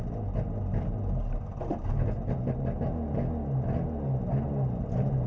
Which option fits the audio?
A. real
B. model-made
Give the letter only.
A